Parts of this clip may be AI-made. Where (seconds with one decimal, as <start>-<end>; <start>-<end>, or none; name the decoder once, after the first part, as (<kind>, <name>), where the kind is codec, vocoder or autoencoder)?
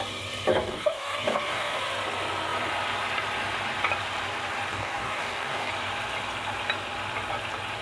0.5-1.8 (codec, DAC); 4.7-5.7